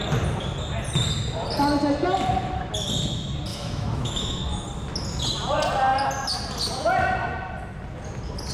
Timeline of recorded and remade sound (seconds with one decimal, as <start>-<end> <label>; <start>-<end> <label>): 0.0-3.5 recorded; 3.5-4.4 remade; 4.4-8.5 recorded